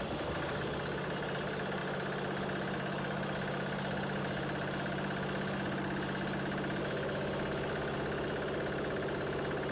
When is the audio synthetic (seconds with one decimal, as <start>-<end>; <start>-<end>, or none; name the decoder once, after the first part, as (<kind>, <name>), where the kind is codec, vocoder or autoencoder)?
none